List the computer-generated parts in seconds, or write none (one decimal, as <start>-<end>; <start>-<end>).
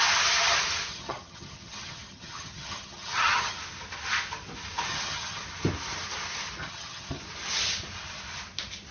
0.9-3.6; 4.9-5.4; 6.6-7.2